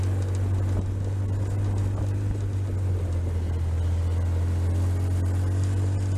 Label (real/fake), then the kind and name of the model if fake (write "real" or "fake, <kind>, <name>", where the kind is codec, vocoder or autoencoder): real